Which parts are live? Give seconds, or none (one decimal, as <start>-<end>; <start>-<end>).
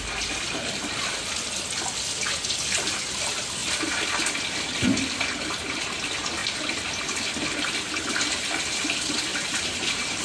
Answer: 0.0-9.3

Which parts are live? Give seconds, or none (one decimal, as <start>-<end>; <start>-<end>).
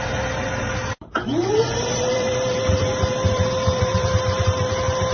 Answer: none